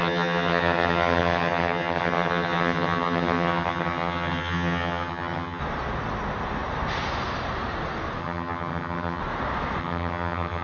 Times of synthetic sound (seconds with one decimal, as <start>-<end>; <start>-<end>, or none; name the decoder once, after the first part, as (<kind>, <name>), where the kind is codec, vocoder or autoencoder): 0.0-5.6 (vocoder, HiFi-GAN); 8.2-9.2; 9.8-10.6